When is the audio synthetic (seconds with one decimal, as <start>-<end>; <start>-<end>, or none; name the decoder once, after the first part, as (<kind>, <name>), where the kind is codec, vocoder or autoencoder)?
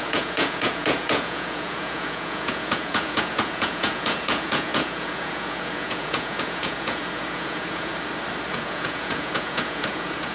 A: 0.0-7.9 (vocoder, Vocos); 8.5-10.3